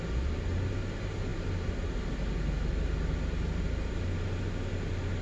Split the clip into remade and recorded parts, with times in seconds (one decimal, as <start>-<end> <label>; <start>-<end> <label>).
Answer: 0.0-5.2 recorded